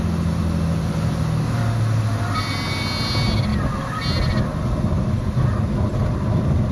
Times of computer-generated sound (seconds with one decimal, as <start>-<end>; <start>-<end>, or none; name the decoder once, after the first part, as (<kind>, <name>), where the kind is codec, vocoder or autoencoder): none